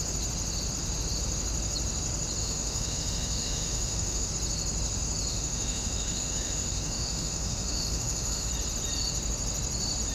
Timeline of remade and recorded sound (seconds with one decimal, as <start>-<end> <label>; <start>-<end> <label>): 0.0-2.4 recorded; 2.4-4.3 remade; 4.3-5.3 recorded; 5.3-8.5 remade; 8.5-10.1 recorded